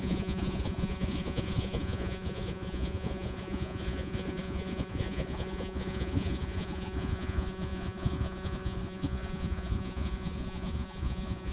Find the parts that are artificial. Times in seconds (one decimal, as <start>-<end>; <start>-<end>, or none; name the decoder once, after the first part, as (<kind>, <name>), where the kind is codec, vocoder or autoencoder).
0.0-11.5 (vocoder, Vocos)